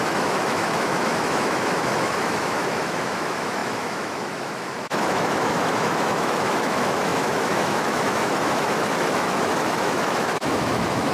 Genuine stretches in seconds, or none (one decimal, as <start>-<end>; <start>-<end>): none